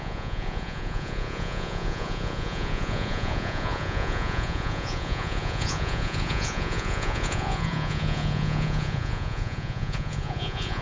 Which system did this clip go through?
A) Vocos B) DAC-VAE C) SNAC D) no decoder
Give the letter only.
A